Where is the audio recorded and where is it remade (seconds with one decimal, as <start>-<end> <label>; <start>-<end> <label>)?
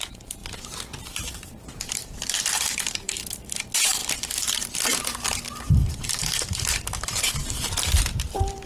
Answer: 0.0-0.4 remade; 0.4-1.5 recorded; 1.5-4.0 remade; 4.0-5.9 recorded; 5.9-8.7 remade